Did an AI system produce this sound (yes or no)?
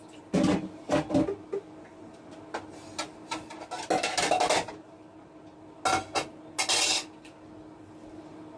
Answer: no